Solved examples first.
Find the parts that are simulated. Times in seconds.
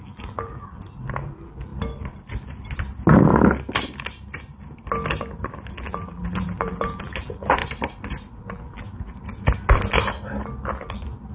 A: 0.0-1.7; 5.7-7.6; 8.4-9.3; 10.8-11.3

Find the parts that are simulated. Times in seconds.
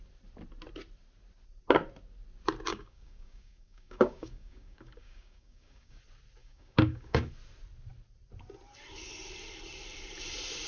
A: 2.7-6.0; 6.4-7.3